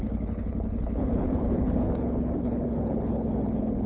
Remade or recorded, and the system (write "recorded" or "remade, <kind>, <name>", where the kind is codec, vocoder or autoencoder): remade, codec, HILCodec